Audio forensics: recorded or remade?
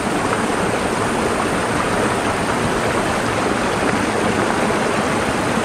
recorded